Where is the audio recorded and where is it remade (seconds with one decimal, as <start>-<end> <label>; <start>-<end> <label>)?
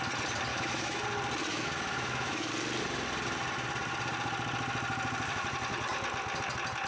0.0-0.5 recorded; 0.5-1.0 remade; 1.0-1.5 recorded; 1.5-2.5 remade; 2.5-6.9 recorded